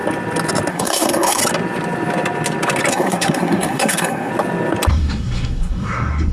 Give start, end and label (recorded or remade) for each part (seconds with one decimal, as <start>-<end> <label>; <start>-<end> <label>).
0.0-0.7 recorded; 0.7-1.4 remade; 1.4-2.9 recorded; 2.9-4.3 remade; 4.3-4.9 recorded; 4.9-6.3 remade